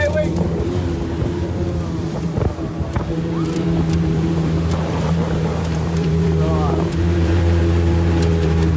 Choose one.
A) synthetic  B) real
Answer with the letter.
A